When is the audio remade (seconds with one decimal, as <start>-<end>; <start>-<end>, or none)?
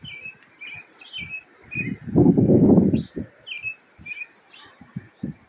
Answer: 2.2-2.7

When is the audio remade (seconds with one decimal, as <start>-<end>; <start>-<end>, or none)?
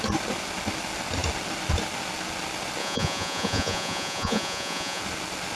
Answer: 2.8-5.0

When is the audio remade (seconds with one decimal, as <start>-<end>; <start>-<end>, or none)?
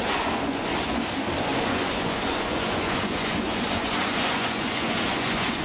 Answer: 0.0-0.7; 1.6-5.6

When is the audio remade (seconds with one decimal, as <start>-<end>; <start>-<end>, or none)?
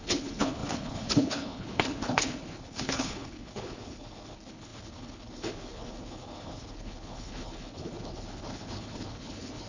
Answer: 0.0-9.7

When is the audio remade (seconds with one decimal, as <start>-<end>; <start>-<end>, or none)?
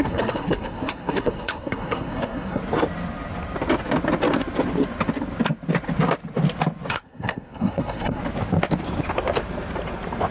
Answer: 0.0-2.6; 6.9-8.2